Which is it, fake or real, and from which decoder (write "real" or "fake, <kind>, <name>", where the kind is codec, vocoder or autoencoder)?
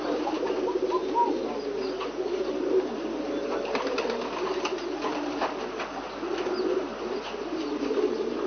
real